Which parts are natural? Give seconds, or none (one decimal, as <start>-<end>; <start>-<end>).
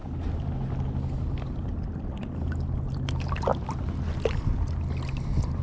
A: 0.0-5.6